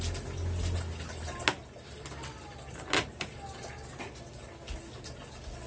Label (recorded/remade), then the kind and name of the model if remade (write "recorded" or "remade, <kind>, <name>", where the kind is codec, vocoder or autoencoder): recorded